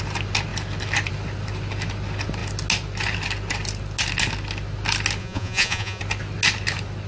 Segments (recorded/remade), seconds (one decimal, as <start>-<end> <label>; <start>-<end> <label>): 0.0-5.2 recorded; 5.2-6.0 remade; 6.0-7.1 recorded